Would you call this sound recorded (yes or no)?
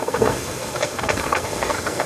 no